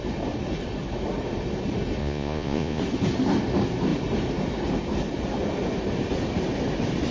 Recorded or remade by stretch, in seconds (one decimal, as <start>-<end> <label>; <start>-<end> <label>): 0.0-2.0 recorded; 2.0-2.8 remade; 2.8-7.1 recorded